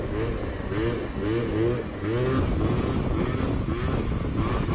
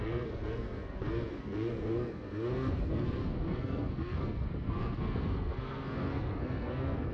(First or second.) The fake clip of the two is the second